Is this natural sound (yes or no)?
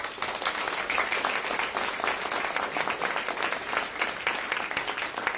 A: yes